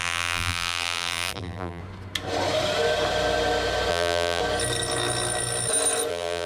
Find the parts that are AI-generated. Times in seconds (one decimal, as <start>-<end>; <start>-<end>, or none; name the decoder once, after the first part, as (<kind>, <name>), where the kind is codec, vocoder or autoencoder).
0.0-1.8 (vocoder, BigVGAN v2); 3.9-4.4; 6.1-6.5